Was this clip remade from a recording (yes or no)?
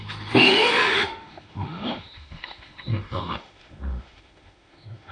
yes